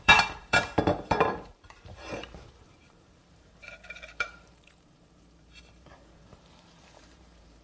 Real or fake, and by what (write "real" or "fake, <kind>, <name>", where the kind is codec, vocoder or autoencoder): fake, vocoder, BigVGAN v2